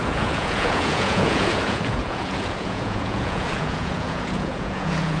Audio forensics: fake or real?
fake